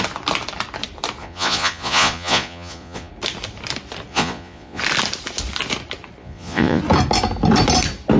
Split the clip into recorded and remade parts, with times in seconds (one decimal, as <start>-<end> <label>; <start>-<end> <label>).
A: 0.0-1.2 recorded; 1.2-3.1 remade; 3.1-4.1 recorded; 4.1-4.8 remade; 4.8-6.2 recorded; 6.2-6.8 remade; 6.8-8.2 recorded